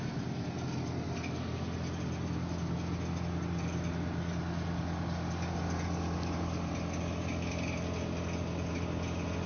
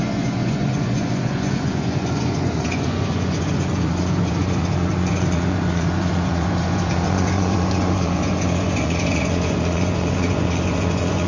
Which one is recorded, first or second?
first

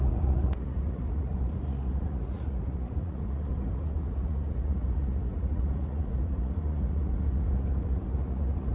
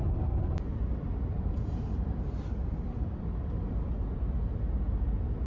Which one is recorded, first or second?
second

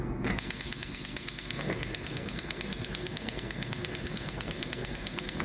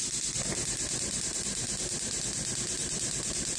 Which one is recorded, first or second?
second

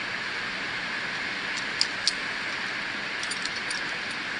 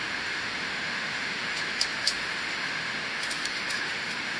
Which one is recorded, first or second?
first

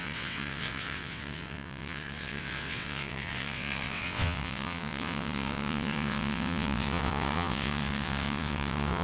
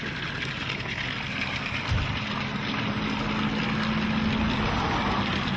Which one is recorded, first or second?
second